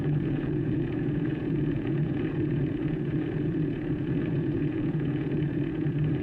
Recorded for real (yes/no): no